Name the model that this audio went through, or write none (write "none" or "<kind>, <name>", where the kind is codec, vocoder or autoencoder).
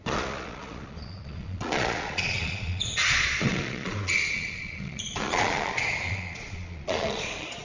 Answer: vocoder, Vocos